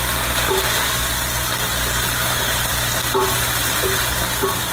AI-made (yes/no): no